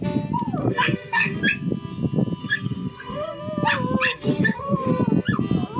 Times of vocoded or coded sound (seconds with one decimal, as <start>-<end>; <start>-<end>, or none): 0.6-1.4; 2.4-3.4; 4.1-4.9